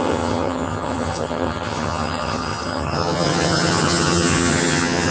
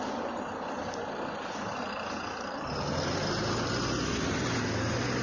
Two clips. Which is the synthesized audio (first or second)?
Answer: first